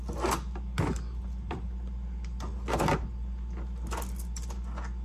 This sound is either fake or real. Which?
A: real